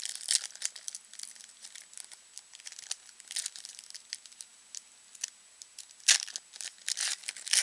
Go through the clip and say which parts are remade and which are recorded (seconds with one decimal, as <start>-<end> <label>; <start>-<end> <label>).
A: 0.0-7.6 recorded